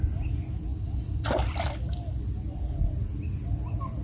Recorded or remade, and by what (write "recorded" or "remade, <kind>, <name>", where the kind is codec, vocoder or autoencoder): recorded